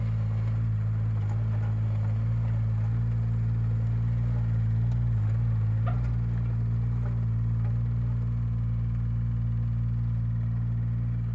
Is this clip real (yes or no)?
yes